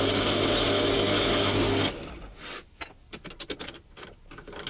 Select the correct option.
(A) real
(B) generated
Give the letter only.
A